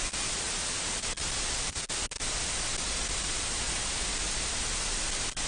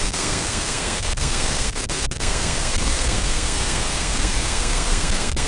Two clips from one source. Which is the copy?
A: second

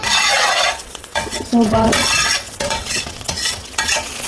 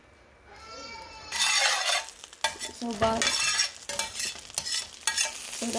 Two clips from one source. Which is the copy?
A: first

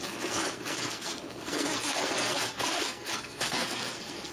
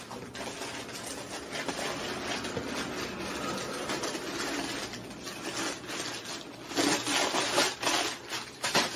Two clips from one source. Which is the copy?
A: first